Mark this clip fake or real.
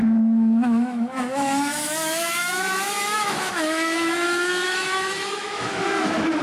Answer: fake